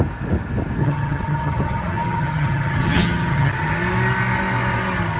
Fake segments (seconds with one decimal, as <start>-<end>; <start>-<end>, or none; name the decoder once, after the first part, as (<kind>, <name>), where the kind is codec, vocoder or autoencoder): 0.8-3.5 (vocoder, HiFi-GAN)